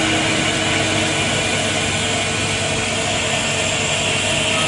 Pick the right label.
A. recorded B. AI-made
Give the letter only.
A